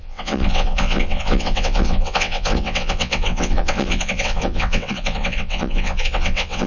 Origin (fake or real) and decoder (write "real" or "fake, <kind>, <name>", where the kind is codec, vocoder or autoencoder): fake, vocoder, WaveNeXt